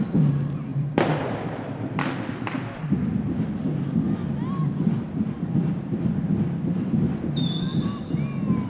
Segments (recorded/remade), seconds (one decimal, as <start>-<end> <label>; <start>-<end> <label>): 0.0-0.7 recorded; 0.7-2.6 remade; 2.6-4.2 recorded; 4.2-7.0 remade; 7.0-8.7 recorded